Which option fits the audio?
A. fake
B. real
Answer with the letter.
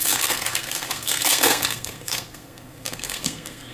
A